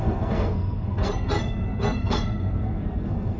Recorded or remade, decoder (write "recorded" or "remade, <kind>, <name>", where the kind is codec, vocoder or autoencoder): remade, codec, SNAC